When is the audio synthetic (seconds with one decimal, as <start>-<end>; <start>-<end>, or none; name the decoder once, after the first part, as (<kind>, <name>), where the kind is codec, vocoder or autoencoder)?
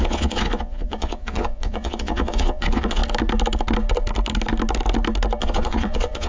0.0-3.0 (vocoder, Vocos); 5.4-6.3